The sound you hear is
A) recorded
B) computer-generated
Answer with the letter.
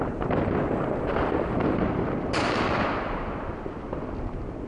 A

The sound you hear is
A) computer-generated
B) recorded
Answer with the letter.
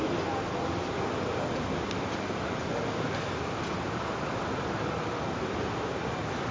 B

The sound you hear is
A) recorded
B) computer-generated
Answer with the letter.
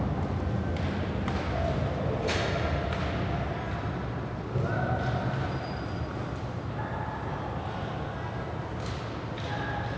A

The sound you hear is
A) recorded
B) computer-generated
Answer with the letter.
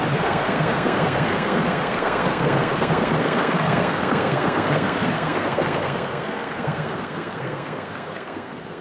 B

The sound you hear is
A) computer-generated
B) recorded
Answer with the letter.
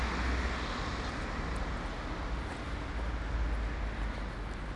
B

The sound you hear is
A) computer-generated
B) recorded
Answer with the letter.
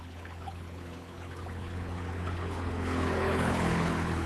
A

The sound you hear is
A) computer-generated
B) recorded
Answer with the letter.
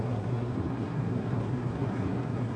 A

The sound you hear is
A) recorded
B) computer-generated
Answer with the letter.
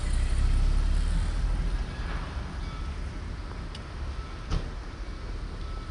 A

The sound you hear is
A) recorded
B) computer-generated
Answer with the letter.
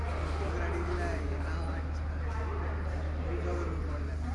A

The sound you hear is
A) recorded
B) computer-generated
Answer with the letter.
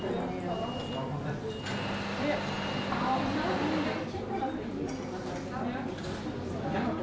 A